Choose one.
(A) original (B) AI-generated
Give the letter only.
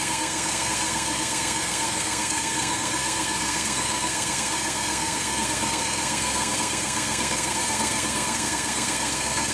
B